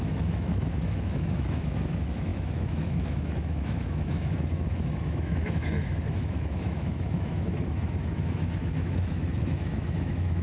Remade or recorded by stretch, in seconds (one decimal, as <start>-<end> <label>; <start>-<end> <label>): 0.0-10.4 remade